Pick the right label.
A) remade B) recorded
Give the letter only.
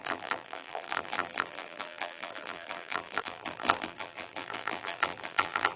A